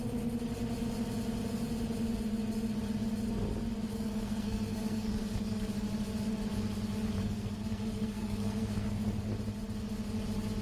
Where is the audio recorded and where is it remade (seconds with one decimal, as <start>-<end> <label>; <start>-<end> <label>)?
0.0-3.9 recorded; 3.9-5.7 remade; 5.7-7.2 recorded; 7.2-9.3 remade; 9.3-10.6 recorded